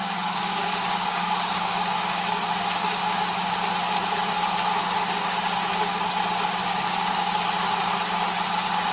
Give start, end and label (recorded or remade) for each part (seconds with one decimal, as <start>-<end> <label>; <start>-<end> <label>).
0.0-2.5 remade; 2.5-6.6 recorded; 6.6-7.4 remade; 7.4-8.9 recorded